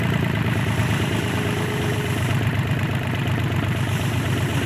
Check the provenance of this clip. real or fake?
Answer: fake